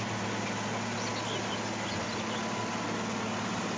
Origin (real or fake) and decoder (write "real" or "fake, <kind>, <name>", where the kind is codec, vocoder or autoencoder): real